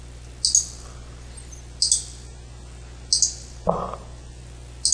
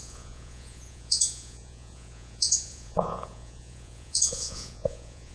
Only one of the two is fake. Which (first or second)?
second